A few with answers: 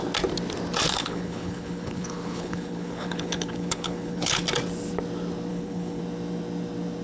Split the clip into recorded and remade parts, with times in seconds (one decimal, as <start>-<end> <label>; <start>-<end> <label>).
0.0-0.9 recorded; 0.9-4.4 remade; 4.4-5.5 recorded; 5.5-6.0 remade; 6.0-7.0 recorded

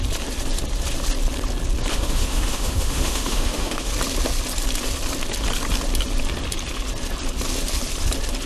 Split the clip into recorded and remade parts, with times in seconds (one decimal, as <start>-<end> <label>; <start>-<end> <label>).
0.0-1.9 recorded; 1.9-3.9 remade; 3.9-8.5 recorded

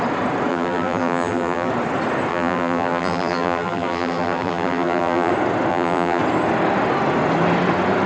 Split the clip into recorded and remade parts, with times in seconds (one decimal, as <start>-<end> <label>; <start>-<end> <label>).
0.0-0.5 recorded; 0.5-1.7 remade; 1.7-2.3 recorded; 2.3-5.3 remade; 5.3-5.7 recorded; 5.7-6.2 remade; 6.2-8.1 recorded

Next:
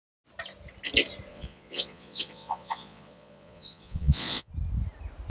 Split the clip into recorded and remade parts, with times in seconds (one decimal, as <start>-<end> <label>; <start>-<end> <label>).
0.0-1.3 recorded; 1.3-4.5 remade; 4.5-5.3 recorded